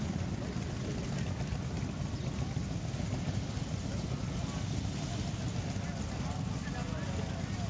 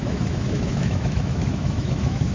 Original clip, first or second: first